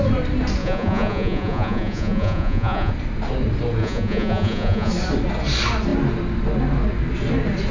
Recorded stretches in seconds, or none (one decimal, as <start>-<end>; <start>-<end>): 0.0-0.6; 2.9-3.8; 4.9-7.7